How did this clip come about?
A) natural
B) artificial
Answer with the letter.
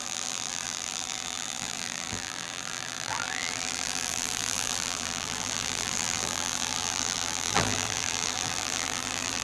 B